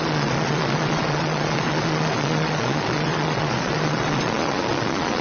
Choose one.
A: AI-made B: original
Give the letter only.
A